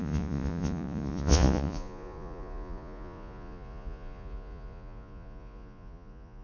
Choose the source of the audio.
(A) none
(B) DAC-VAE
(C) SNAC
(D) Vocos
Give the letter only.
D